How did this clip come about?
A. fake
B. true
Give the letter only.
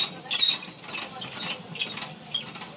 B